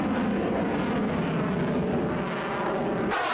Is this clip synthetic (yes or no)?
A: no